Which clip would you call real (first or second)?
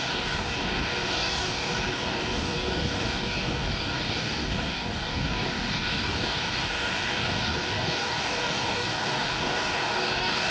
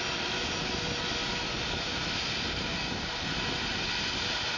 second